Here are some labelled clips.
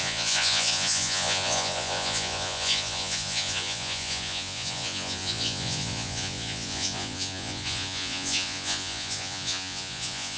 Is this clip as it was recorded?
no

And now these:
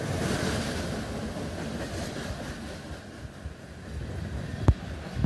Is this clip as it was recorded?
yes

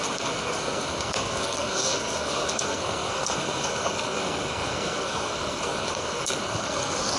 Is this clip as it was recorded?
no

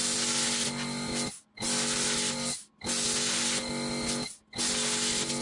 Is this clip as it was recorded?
yes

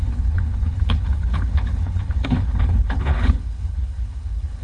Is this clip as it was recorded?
no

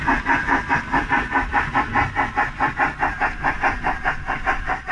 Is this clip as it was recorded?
yes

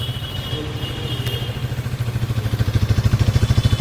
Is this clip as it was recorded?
yes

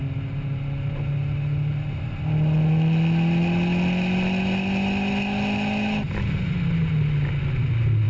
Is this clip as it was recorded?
yes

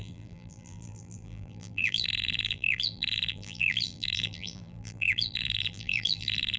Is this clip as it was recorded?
no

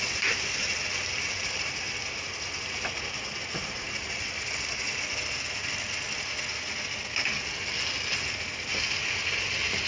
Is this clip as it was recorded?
yes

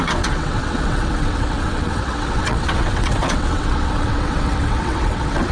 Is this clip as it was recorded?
no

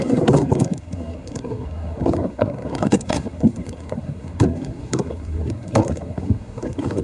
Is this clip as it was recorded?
no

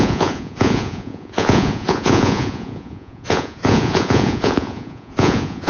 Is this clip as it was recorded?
no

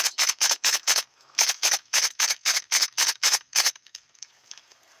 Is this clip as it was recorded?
no